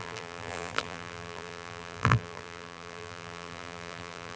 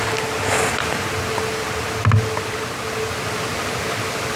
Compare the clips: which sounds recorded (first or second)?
second